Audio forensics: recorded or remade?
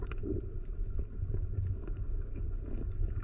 recorded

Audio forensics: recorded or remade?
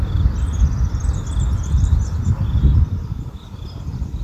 recorded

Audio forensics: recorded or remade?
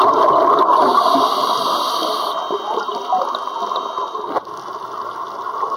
recorded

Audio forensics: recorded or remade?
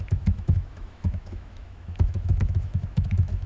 remade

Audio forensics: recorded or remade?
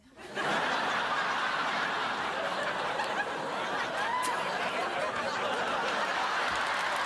recorded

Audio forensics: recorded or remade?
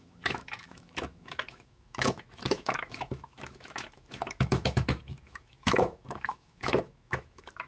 remade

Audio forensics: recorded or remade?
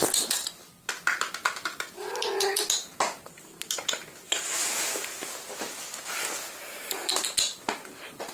recorded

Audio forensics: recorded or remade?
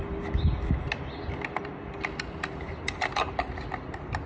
recorded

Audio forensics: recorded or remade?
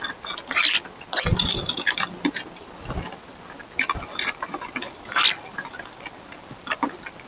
recorded